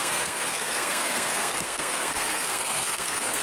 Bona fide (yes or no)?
no